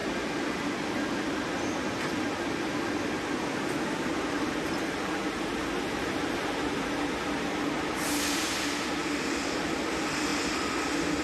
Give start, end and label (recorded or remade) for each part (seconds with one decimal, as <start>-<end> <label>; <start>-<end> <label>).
0.0-11.2 recorded